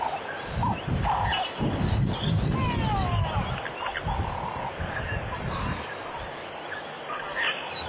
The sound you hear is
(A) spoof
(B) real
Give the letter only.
B